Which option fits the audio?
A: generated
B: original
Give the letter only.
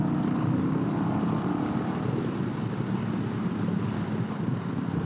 B